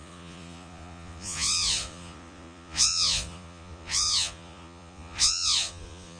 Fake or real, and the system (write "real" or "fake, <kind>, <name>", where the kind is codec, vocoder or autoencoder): fake, vocoder, Vocos